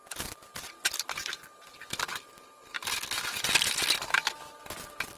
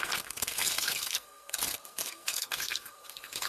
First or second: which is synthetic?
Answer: second